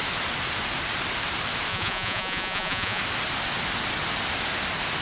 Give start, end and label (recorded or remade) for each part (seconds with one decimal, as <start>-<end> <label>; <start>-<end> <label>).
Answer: 0.0-1.7 recorded; 1.7-3.0 remade; 3.0-5.0 recorded